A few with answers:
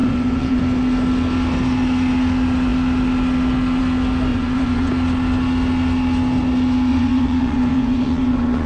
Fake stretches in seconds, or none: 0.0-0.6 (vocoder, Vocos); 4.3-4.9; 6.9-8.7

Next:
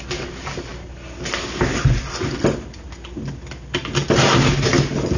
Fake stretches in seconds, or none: none

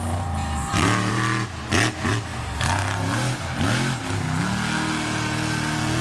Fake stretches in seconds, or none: none

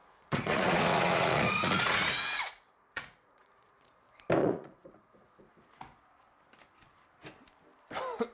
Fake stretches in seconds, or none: 0.0-4.0 (vocoder, Vocos); 4.4-5.5

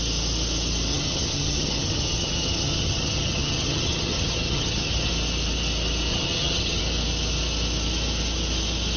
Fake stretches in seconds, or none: 0.9-5.1 (vocoder, HiFi-GAN); 6.1-6.8

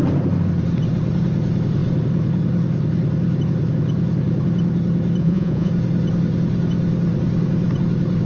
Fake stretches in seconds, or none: 5.2-5.7 (vocoder, Vocos)